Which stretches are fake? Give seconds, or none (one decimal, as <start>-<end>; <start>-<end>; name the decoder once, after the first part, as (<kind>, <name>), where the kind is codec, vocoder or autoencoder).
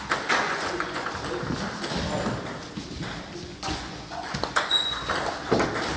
0.4-1.1 (vocoder, Vocos); 3.5-5.1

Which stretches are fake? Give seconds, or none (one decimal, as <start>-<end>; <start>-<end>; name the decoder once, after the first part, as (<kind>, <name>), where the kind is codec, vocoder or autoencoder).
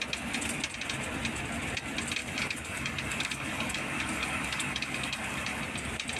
2.2-5.6 (codec, DAC)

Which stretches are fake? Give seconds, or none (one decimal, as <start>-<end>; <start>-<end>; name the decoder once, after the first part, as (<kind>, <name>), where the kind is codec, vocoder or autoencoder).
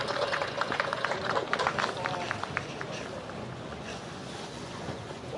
0.0-1.7 (vocoder, Vocos); 3.4-5.4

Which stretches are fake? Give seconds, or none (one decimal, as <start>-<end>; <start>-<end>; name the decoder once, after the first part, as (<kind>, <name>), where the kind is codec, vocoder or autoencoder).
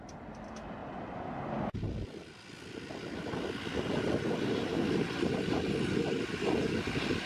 none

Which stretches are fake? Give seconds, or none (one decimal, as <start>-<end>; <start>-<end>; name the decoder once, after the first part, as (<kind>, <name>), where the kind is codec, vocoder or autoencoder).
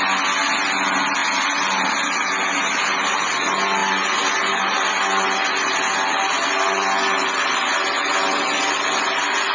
none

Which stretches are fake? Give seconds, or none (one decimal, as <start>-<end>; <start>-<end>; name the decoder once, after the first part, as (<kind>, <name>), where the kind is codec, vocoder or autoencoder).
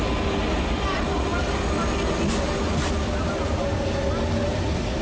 none